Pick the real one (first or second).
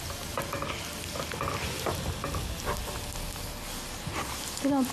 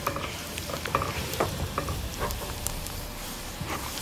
first